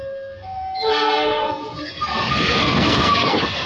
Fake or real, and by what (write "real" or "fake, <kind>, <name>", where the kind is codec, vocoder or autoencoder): fake, codec, SNAC